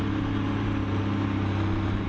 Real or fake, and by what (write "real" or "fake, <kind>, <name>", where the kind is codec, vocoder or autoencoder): real